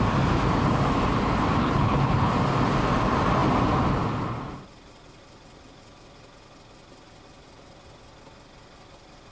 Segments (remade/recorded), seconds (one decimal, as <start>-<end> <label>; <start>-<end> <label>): 0.0-1.6 recorded; 1.6-2.3 remade; 2.3-9.3 recorded